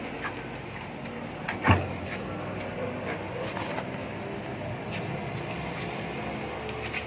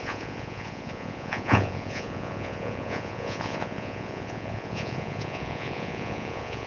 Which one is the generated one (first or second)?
second